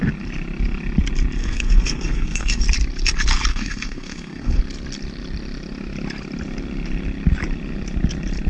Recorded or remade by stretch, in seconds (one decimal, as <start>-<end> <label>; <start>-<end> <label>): 0.0-1.4 recorded; 1.4-2.6 remade; 2.6-3.5 recorded; 3.5-4.6 remade; 4.6-8.5 recorded